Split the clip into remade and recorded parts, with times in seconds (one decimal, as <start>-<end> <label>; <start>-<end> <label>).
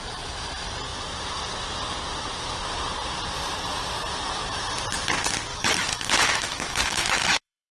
0.0-5.5 recorded; 5.5-7.7 remade